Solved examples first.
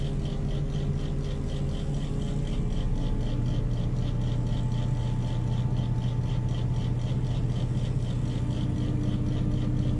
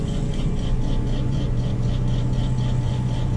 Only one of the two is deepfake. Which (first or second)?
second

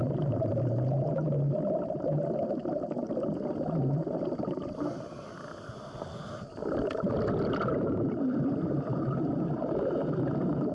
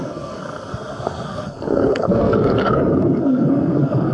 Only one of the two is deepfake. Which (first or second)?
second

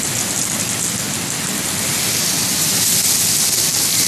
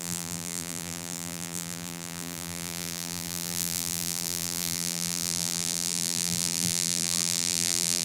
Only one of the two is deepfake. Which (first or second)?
second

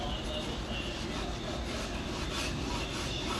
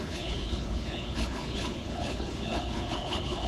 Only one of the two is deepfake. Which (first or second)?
second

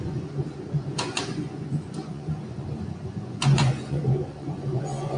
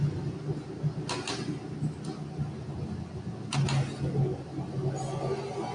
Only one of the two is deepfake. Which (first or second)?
first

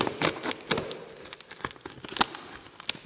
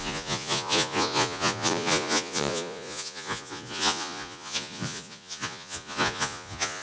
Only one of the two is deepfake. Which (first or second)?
second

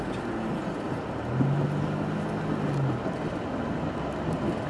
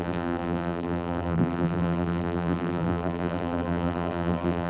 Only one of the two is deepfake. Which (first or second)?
second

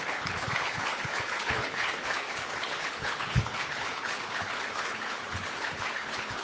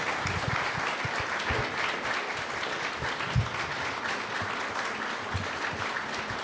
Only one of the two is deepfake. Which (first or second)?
first